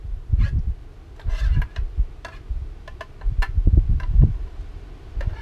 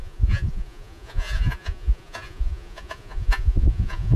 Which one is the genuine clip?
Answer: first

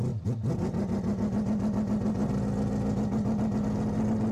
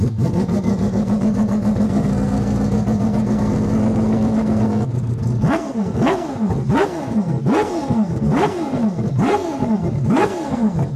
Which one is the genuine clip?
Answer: first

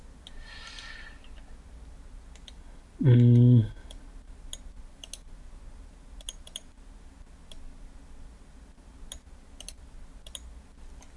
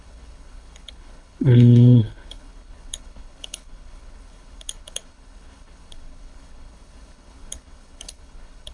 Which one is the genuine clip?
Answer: first